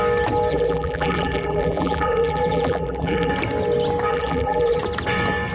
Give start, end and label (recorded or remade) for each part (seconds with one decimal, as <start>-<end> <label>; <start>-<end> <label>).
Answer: 0.0-0.5 recorded; 0.5-3.3 remade; 3.3-4.1 recorded; 4.1-4.8 remade; 4.8-5.5 recorded